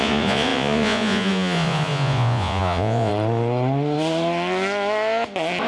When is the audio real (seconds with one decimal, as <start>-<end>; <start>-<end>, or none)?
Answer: 3.1-5.7